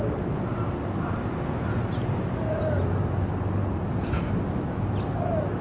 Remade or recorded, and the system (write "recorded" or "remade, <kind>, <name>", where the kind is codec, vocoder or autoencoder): recorded